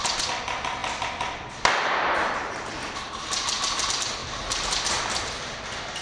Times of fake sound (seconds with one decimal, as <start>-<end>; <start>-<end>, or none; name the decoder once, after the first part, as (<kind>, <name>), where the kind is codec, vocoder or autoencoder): none